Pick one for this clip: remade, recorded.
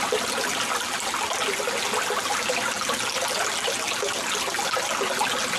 recorded